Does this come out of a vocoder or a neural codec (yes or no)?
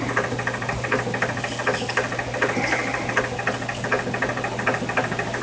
no